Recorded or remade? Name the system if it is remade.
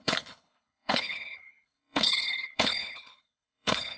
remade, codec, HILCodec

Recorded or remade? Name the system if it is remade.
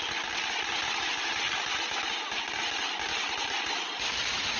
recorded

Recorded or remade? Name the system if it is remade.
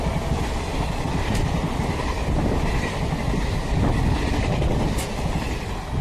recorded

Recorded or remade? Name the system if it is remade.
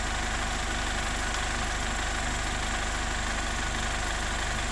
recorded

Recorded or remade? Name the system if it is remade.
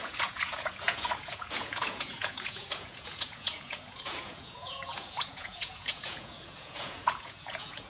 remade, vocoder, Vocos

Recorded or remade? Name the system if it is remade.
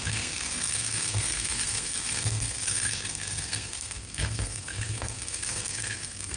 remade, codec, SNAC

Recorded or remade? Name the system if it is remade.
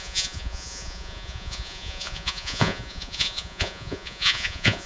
remade, vocoder, Vocos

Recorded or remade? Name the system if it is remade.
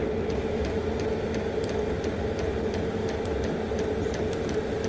recorded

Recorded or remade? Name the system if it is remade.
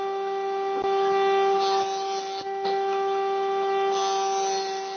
recorded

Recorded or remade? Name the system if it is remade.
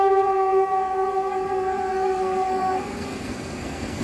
remade, codec, SNAC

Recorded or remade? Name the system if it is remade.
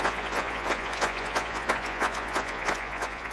remade, vocoder, Vocos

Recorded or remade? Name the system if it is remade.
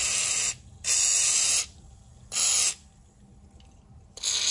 recorded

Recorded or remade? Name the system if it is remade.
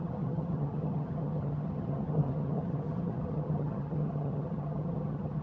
remade, vocoder, HiFi-GAN